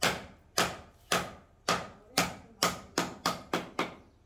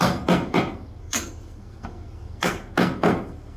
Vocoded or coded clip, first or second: second